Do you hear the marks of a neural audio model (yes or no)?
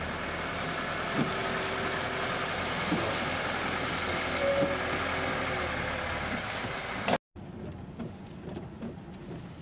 no